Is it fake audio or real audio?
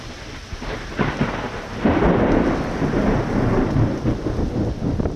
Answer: real